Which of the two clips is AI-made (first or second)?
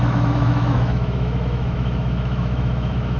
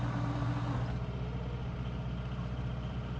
first